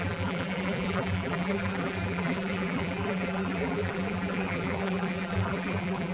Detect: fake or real fake